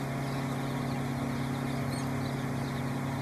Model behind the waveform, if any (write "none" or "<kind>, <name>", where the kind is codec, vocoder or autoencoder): none